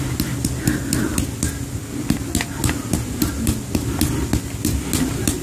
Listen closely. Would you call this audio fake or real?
real